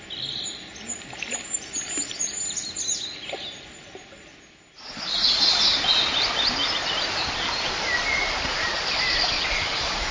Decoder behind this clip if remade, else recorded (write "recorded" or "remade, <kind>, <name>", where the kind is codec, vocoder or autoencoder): recorded